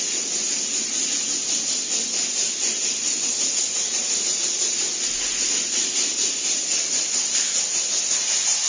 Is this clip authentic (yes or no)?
yes